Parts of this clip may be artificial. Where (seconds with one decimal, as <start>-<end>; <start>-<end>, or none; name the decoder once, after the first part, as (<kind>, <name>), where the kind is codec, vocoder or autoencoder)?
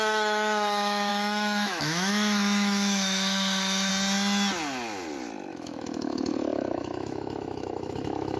0.0-3.9 (autoencoder, DAC-VAE); 5.5-8.4